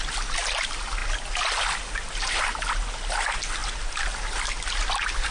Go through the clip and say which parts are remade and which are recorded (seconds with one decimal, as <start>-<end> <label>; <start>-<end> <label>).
0.0-5.3 recorded